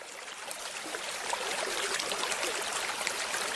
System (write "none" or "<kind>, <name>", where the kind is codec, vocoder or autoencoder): vocoder, BigVGAN v2